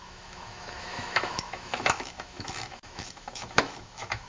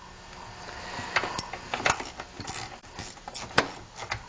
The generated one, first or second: first